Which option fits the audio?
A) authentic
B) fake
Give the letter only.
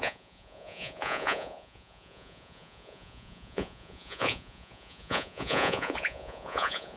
B